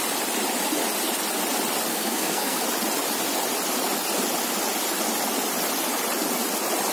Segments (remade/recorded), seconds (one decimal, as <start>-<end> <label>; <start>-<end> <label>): 0.0-1.9 recorded; 1.9-2.6 remade; 2.6-6.9 recorded